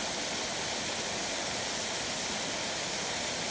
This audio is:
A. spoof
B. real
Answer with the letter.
B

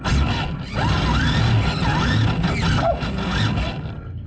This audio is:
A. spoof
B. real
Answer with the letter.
B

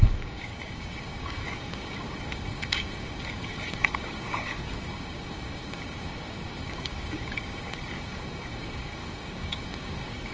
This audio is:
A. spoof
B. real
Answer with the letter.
A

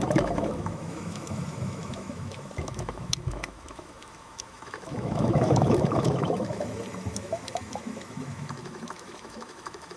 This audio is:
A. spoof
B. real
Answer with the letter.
A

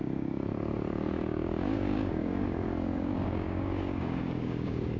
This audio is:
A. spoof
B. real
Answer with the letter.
A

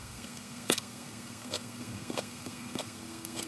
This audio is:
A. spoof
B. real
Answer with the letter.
A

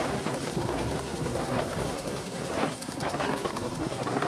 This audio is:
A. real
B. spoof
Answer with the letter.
B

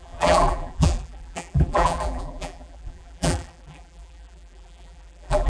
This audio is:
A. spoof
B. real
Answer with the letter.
A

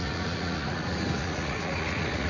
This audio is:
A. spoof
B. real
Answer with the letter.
A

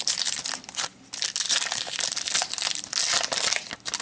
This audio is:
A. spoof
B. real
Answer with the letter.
B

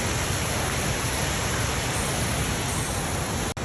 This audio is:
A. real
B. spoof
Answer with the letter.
A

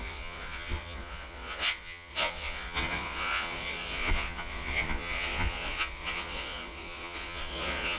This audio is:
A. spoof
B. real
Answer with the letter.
A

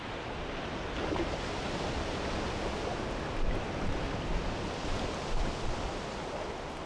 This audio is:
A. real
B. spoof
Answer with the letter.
A